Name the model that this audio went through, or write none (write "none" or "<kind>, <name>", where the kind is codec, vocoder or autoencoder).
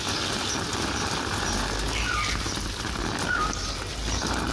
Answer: none